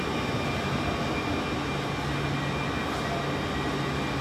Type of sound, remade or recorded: recorded